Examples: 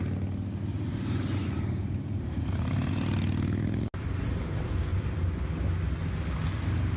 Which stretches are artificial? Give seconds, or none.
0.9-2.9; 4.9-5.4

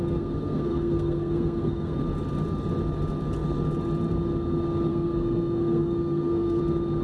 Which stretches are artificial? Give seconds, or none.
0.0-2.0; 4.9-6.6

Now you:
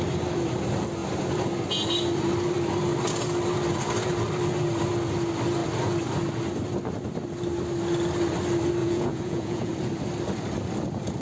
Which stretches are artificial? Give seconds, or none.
8.8-9.7